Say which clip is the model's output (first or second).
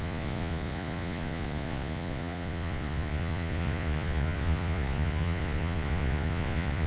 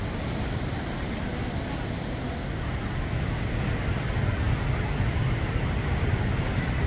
first